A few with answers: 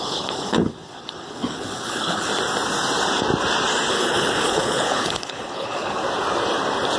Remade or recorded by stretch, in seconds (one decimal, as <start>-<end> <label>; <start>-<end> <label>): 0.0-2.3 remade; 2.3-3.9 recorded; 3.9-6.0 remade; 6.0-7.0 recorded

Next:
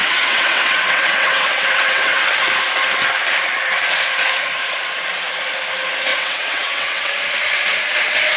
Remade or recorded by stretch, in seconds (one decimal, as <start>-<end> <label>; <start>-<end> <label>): 0.0-2.3 remade; 2.3-6.1 recorded; 6.1-7.1 remade; 7.1-8.4 recorded

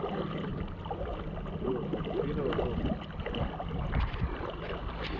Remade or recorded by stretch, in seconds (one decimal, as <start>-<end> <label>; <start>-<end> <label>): 0.0-5.2 recorded

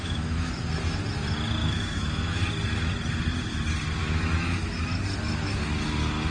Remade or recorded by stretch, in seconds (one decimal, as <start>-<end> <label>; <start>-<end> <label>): 0.0-0.5 remade; 0.5-1.6 recorded; 1.6-2.4 remade; 2.4-4.0 recorded; 4.0-4.8 remade; 4.8-6.3 recorded

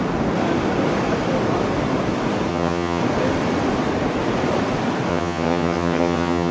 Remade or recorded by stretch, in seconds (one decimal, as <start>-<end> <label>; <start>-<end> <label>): 0.0-2.5 recorded; 2.5-3.0 remade; 3.0-5.1 recorded; 5.1-6.5 remade

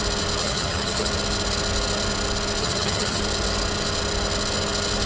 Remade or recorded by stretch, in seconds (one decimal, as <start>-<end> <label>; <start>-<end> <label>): 0.0-0.4 recorded; 0.4-1.1 remade; 1.1-2.6 recorded; 2.6-3.2 remade; 3.2-5.1 recorded

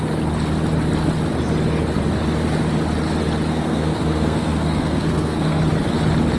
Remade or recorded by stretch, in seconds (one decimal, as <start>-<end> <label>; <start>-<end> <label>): 0.0-3.5 recorded; 3.5-5.6 remade; 5.6-6.4 recorded